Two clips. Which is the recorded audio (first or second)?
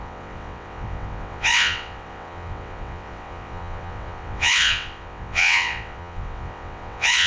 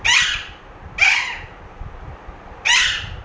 second